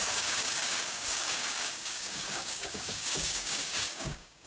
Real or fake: fake